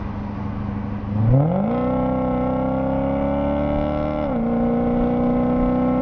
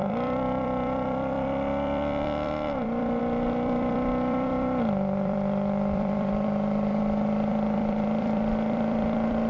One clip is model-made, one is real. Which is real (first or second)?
first